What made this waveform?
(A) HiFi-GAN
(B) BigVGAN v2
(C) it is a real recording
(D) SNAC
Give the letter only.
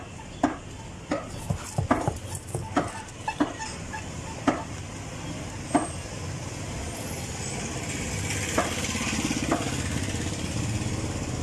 C